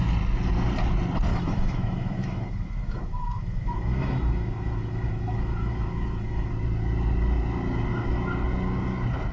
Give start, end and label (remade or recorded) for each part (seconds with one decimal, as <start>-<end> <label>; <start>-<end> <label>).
0.0-1.3 recorded; 1.3-6.5 remade; 6.5-9.3 recorded